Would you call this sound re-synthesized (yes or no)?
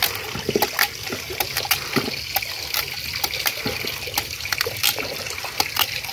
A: no